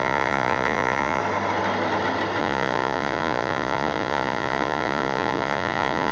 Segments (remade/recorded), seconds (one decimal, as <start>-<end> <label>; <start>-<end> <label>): 0.0-1.2 remade; 1.2-2.4 recorded; 2.4-6.1 remade

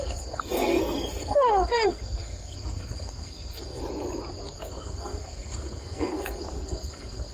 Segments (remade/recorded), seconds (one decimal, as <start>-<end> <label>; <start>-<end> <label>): 0.0-3.8 remade; 3.8-4.6 recorded; 4.6-7.3 remade

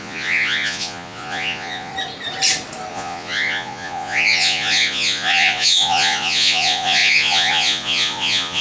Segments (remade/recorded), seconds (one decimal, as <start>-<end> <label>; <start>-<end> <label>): 0.0-1.9 remade; 1.9-2.9 recorded; 2.9-8.6 remade

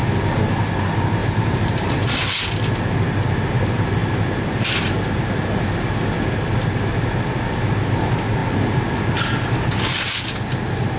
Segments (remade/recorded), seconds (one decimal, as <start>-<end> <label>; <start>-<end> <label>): 0.0-1.2 recorded; 1.2-2.2 remade; 2.2-11.0 recorded